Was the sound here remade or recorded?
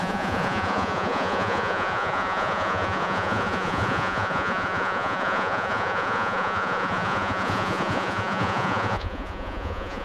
remade